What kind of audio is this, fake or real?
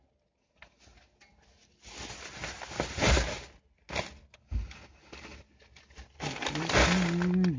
real